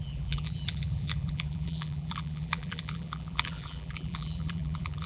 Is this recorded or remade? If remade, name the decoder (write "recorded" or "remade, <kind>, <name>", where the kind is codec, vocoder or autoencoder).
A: remade, vocoder, BigVGAN v2